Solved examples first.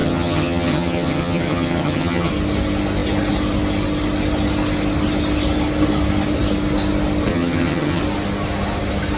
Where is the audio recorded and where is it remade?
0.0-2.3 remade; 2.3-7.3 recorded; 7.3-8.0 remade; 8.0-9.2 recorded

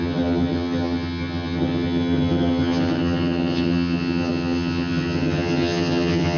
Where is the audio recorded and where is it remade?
0.0-6.4 remade

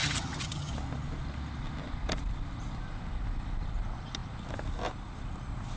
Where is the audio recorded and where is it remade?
0.0-0.7 remade; 0.7-5.8 recorded

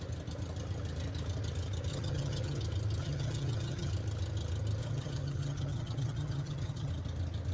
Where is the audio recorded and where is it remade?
0.0-1.9 recorded; 1.9-2.6 remade; 2.6-3.0 recorded; 3.0-3.9 remade; 3.9-4.8 recorded; 4.8-6.9 remade; 6.9-7.5 recorded

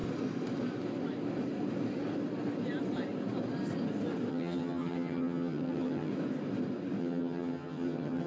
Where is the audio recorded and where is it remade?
0.0-4.3 recorded; 4.3-6.1 remade; 6.1-7.0 recorded; 7.0-8.3 remade